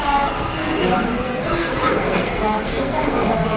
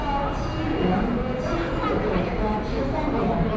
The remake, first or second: first